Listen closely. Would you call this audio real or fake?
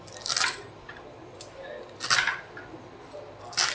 real